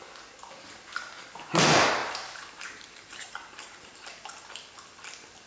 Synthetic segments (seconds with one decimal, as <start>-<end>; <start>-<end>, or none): 2.0-4.1